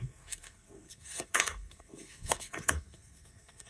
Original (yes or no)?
no